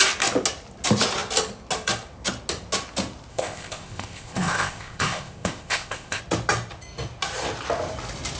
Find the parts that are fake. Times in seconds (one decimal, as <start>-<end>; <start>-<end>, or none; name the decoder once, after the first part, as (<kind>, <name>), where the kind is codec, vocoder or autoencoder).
3.3-6.2 (codec, ZipCodec)